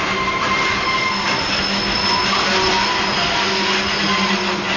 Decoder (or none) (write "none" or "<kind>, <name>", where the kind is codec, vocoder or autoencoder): none